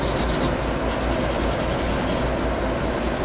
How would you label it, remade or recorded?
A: recorded